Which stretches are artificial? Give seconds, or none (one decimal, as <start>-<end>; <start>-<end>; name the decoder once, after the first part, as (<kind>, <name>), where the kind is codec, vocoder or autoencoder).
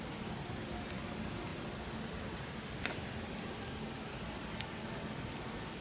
none